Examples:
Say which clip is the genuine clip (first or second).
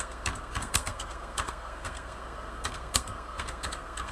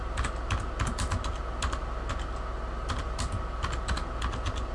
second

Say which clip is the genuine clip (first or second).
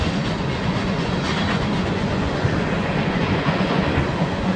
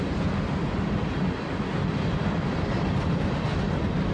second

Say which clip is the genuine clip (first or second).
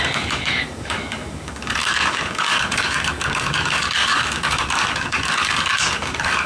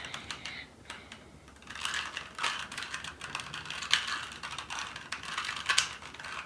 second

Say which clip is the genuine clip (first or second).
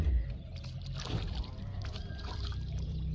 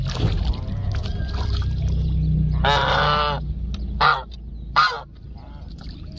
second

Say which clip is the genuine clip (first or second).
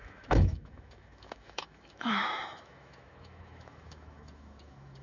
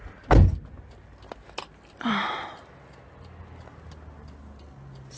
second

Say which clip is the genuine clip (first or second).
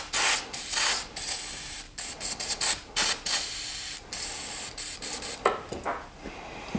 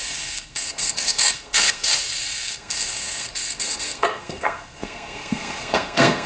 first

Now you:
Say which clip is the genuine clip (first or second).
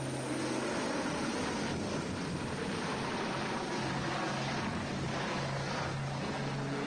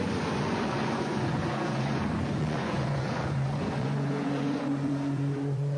first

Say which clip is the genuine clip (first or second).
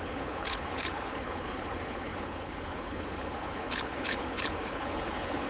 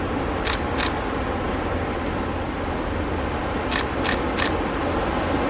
second